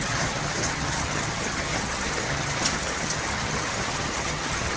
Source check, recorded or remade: remade